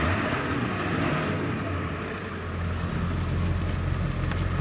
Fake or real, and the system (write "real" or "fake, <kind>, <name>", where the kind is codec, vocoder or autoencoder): real